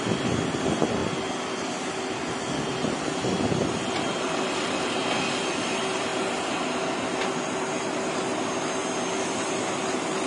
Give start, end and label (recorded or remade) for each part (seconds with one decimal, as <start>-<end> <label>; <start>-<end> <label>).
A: 0.0-1.0 remade; 1.0-2.4 recorded; 2.4-6.1 remade; 6.1-9.2 recorded; 9.2-10.3 remade